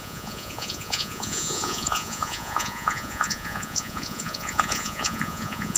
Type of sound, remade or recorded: remade